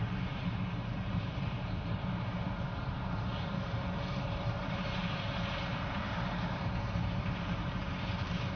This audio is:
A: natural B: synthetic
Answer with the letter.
B